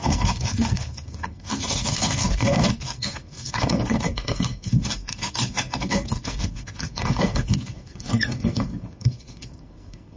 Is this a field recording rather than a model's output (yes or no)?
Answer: no